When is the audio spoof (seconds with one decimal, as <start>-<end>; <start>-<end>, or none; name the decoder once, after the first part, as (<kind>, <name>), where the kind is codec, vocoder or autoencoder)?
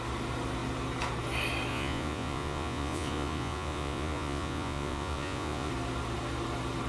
1.7-5.7 (vocoder, Vocos)